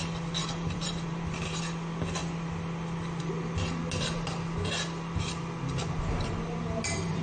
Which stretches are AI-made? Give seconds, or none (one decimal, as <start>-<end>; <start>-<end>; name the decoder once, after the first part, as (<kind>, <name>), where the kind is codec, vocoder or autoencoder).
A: 0.4-1.6 (vocoder, BigVGAN v2)